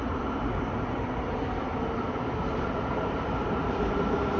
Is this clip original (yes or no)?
no